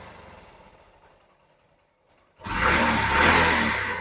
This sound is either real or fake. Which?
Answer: real